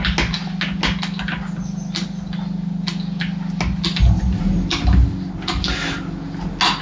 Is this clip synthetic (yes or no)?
no